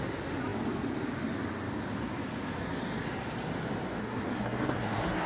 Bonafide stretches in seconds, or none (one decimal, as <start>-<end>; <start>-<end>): 0.0-4.0